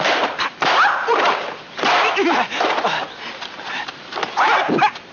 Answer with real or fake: real